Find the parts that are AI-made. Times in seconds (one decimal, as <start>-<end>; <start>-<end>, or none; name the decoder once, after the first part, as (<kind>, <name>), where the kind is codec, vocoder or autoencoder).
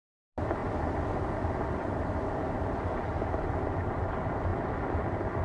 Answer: 0.0-5.4 (vocoder, BigVGAN v2)